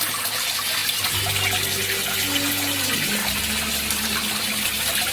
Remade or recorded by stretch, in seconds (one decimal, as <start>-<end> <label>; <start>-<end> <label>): 0.0-5.1 recorded